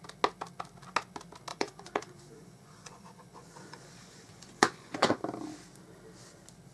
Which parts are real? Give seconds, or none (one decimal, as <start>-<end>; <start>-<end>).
0.0-1.5; 5.2-6.7